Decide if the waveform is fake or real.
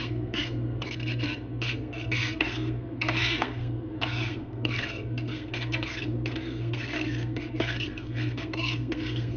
fake